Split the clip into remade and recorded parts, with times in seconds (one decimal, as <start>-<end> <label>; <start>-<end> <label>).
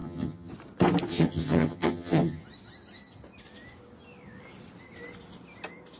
0.0-0.5 remade; 0.5-1.1 recorded; 1.1-2.4 remade; 2.4-6.0 recorded